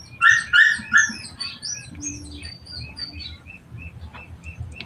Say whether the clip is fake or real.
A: real